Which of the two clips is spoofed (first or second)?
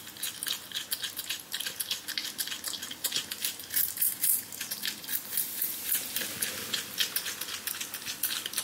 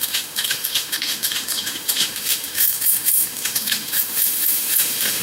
second